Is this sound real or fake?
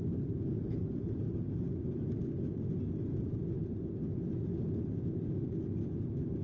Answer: real